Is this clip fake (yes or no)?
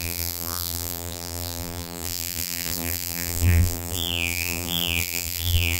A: yes